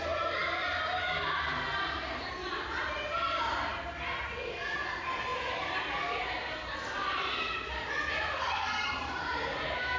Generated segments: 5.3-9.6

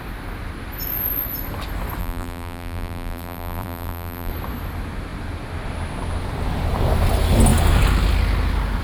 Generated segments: 2.0-4.3

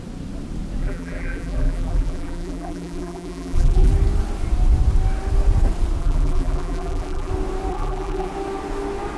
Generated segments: 0.8-3.9; 6.0-7.3; 7.7-8.3

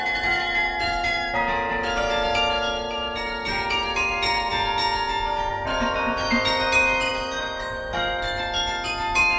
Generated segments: 0.0-4.5; 5.5-9.4

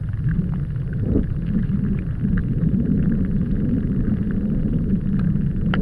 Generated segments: 0.0-5.8